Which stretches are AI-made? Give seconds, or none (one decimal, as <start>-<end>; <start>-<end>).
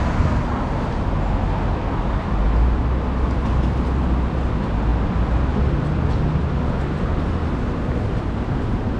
none